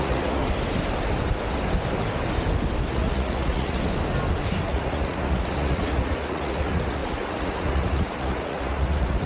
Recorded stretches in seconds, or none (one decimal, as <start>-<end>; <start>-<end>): 0.4-2.9; 3.8-4.6